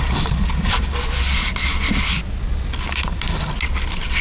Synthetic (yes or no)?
no